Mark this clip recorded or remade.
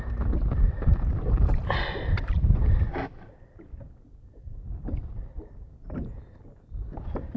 recorded